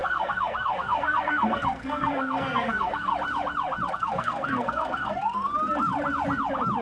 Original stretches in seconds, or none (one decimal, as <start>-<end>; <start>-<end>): 3.1-3.9; 5.5-6.8